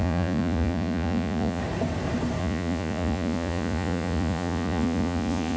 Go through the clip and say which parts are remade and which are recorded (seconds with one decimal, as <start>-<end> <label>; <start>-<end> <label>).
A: 0.0-1.6 remade; 1.6-2.4 recorded; 2.4-5.6 remade